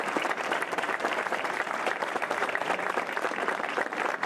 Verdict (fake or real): fake